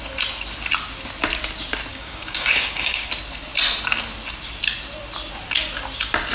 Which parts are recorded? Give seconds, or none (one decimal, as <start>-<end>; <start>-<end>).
0.0-1.9; 3.1-6.3